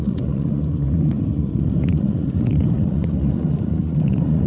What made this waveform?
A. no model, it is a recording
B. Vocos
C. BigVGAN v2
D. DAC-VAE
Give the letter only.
B